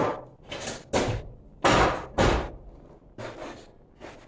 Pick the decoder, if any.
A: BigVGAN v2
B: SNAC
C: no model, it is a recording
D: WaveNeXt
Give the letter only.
C